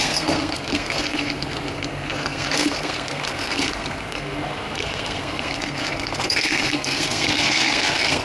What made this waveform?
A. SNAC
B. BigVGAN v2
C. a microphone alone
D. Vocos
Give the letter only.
A